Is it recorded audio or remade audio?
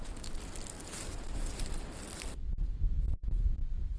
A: recorded